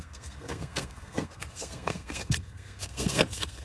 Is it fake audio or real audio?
fake